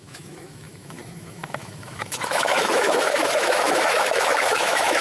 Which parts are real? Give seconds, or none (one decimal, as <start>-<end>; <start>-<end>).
none